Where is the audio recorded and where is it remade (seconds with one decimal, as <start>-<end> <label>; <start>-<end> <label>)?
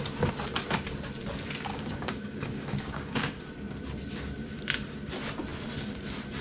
0.0-1.7 recorded; 1.7-3.4 remade; 3.4-6.4 recorded